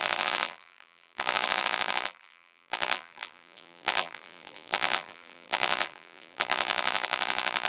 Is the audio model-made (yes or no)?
yes